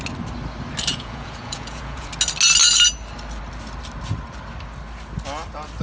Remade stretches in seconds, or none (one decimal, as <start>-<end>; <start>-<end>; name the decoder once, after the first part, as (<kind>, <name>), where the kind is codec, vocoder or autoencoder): 0.9-2.1 (vocoder, Vocos)

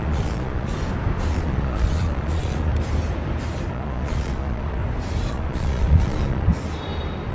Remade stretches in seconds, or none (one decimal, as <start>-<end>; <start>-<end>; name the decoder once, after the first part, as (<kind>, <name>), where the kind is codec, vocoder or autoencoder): 0.0-0.7 (vocoder, Vocos); 1.3-2.7; 3.7-4.8; 5.3-6.5

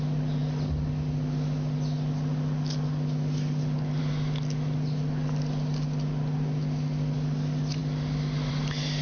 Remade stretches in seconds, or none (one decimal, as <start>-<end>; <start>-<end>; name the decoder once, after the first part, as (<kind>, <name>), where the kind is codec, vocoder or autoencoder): none

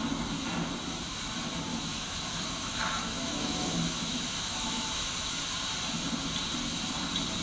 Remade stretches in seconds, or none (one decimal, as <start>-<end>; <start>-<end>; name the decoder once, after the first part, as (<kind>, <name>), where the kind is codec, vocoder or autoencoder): 1.7-5.4 (autoencoder, DAC-VAE)

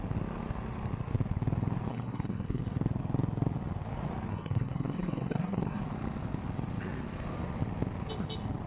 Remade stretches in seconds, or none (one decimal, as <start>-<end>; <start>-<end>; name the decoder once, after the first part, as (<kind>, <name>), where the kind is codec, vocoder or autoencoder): 1.9-2.6 (codec, SNAC); 4.3-5.8

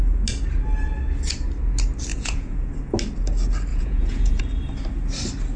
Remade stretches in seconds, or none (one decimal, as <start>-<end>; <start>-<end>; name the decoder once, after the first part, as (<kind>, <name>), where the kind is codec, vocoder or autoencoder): 2.1-2.7 (vocoder, Vocos); 3.7-4.4

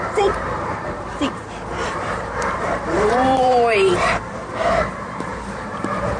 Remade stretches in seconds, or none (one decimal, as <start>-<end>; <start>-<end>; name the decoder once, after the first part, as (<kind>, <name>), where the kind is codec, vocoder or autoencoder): 0.0-6.2 (vocoder, BigVGAN v2)

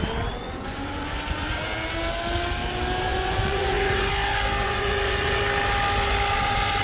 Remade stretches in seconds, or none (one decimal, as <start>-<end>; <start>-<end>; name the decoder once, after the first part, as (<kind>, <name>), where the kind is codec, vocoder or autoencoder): 0.4-1.6 (vocoder, Vocos); 3.1-4.1; 4.6-5.4